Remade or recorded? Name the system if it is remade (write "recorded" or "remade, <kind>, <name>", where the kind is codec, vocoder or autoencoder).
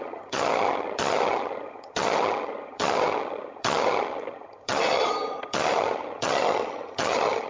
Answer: remade, vocoder, HiFi-GAN